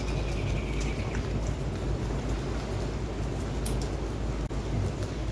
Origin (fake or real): real